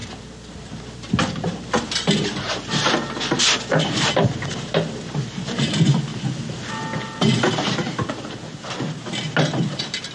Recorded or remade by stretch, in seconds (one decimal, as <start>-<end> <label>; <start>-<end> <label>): 0.0-6.1 remade; 6.1-7.2 recorded; 7.2-10.1 remade